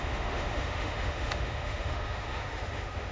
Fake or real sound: fake